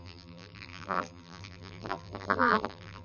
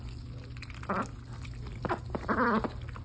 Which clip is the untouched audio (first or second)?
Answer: second